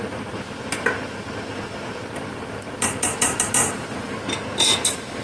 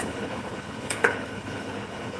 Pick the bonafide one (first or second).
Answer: first